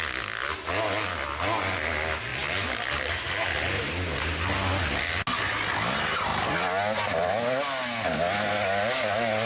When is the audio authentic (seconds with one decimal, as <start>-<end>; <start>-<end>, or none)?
0.0-9.5

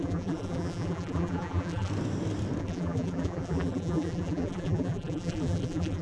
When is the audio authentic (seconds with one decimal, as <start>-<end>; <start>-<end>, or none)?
1.9-2.6